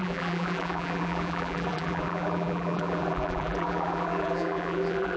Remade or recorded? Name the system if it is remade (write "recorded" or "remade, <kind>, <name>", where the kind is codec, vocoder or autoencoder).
remade, vocoder, BigVGAN v2